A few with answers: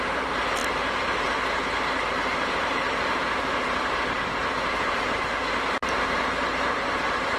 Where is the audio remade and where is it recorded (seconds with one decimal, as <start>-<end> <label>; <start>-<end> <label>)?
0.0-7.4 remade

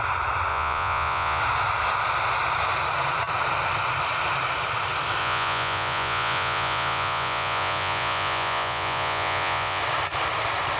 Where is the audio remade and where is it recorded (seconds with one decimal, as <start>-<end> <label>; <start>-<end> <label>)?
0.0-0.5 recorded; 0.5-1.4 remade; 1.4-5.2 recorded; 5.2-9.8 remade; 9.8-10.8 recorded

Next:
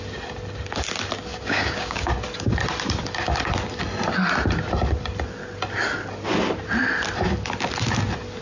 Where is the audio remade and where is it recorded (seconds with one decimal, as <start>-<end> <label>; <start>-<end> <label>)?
0.0-1.3 recorded; 1.3-2.1 remade; 2.1-8.4 recorded

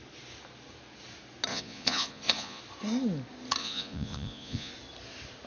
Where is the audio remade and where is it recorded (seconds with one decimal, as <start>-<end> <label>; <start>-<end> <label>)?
0.0-1.5 recorded; 1.5-2.6 remade; 2.6-3.6 recorded; 3.6-4.7 remade; 4.7-5.5 recorded

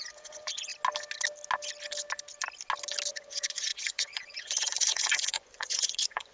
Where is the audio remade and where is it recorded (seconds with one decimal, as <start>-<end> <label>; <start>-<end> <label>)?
0.0-0.7 remade; 0.7-3.1 recorded; 3.1-6.3 remade